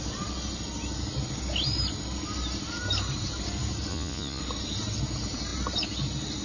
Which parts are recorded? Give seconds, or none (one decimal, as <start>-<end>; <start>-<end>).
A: 0.0-3.9; 4.4-6.4